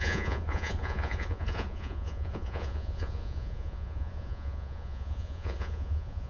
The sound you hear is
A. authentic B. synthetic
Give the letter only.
B